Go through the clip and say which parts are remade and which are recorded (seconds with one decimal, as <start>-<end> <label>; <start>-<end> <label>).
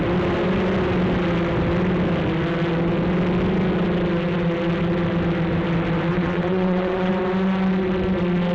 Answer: 0.0-6.1 recorded; 6.1-7.1 remade; 7.1-8.5 recorded